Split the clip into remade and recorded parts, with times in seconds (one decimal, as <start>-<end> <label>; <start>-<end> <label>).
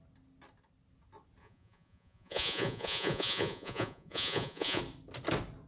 0.0-1.4 recorded; 1.4-4.8 remade; 4.8-5.7 recorded